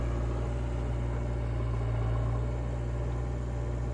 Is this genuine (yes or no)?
yes